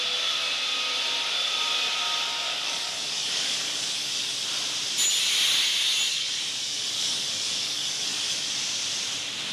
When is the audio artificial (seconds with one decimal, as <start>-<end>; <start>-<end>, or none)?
2.3-4.3; 6.1-8.5